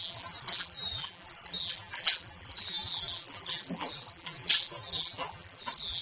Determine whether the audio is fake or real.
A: fake